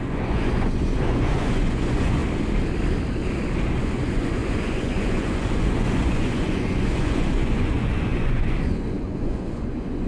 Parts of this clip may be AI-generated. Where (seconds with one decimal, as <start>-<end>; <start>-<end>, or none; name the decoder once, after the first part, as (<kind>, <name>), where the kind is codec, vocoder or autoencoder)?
0.0-2.2 (vocoder, Vocos); 3.8-10.1